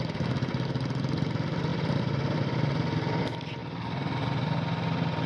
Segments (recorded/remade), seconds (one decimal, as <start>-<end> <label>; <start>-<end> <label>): 0.0-1.7 recorded; 1.7-3.2 remade; 3.2-5.3 recorded

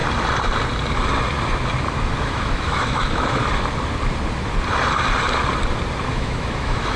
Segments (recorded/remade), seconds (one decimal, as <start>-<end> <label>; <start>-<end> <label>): 0.0-2.2 recorded; 2.2-3.4 remade; 3.4-6.1 recorded; 6.1-7.0 remade

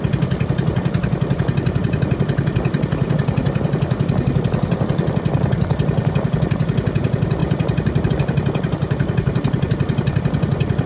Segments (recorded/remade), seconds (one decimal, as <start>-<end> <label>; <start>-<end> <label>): 0.0-7.4 recorded; 7.4-8.1 remade; 8.1-8.8 recorded; 8.8-9.7 remade; 9.7-10.9 recorded

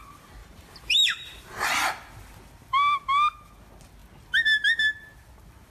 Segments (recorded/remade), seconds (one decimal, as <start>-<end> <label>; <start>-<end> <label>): 0.0-0.4 recorded; 0.4-1.4 remade; 1.4-5.7 recorded

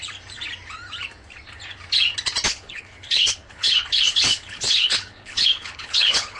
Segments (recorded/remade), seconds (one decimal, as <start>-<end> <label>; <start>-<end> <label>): 0.0-2.5 recorded; 2.5-6.4 remade